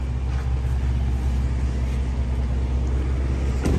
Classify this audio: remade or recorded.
recorded